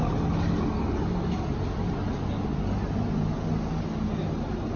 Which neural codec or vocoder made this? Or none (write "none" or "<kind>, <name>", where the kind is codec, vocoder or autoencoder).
none